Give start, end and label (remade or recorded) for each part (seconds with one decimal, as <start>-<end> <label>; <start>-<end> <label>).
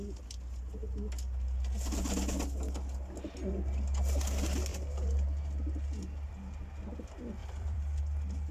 0.0-4.7 recorded; 4.7-6.3 remade; 6.3-7.4 recorded; 7.4-8.0 remade; 8.0-8.5 recorded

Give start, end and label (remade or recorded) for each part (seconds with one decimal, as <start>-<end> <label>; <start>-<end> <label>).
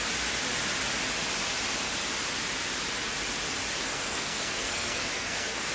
0.0-3.8 recorded; 3.8-5.7 remade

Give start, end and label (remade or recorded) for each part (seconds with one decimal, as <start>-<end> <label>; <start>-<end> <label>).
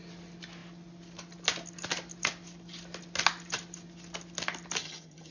0.0-4.8 recorded; 4.8-5.3 remade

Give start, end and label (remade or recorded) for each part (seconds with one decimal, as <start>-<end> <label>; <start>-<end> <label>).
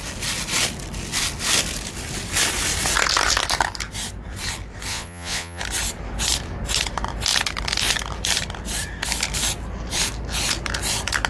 0.0-4.9 recorded; 4.9-5.6 remade; 5.6-11.3 recorded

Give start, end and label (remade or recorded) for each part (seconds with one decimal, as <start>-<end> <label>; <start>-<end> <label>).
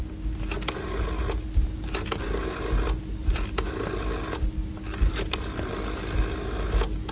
0.0-7.1 recorded